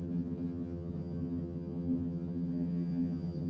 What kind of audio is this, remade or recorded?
remade